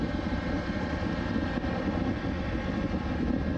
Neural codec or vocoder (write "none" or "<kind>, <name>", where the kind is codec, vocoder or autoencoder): none